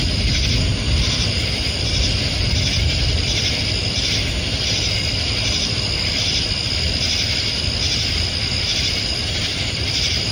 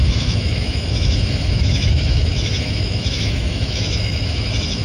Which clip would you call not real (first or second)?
second